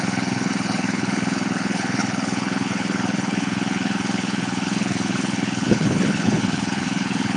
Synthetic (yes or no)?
yes